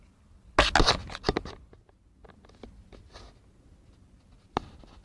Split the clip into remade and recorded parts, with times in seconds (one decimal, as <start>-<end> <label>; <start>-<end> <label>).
0.0-5.0 recorded